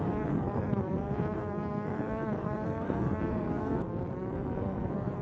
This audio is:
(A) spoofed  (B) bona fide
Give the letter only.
A